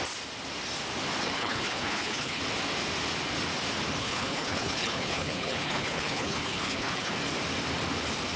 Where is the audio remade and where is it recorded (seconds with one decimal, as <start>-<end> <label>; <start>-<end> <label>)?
0.0-1.2 recorded; 1.2-2.4 remade; 2.4-4.0 recorded; 4.0-7.1 remade; 7.1-8.4 recorded